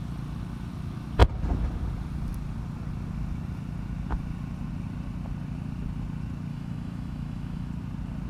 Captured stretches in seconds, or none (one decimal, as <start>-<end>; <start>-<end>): 0.0-6.5; 7.7-8.3